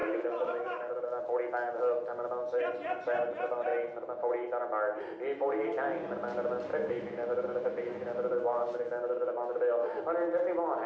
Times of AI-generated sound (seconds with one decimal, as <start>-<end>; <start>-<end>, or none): 0.0-0.9; 6.7-10.0